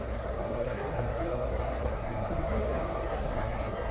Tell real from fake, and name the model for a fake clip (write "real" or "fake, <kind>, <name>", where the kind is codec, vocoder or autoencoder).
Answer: fake, codec, SNAC